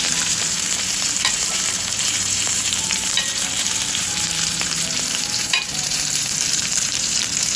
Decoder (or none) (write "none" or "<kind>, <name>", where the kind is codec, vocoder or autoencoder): vocoder, BigVGAN v2